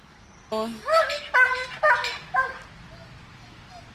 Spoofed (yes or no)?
no